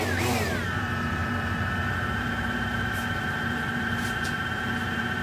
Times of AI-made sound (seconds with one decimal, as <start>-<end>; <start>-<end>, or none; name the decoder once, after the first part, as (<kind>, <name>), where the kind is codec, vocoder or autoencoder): 0.0-5.2 (vocoder, BigVGAN v2)